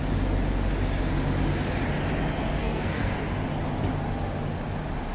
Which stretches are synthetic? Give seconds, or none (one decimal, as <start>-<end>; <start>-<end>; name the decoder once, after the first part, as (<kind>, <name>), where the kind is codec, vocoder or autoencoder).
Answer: 2.6-3.2 (codec, SNAC)